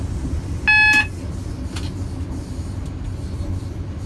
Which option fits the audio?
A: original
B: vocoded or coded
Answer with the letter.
A